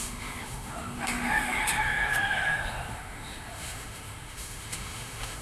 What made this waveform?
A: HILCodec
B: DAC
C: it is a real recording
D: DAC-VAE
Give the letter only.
D